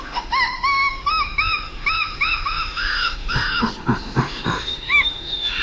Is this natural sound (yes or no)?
no